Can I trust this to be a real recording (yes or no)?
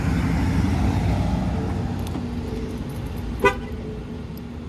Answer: yes